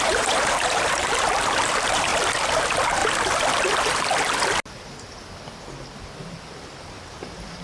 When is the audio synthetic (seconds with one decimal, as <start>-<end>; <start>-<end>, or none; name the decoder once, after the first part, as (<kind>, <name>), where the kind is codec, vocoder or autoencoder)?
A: 0.0-2.1 (vocoder, BigVGAN v2); 2.6-3.0; 6.2-7.6